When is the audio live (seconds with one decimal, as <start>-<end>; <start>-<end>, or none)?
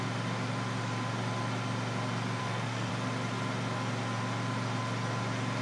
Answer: 0.0-2.4; 2.9-5.6